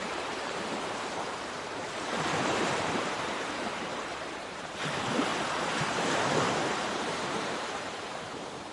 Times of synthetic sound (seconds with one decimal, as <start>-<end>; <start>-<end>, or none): 0.0-8.7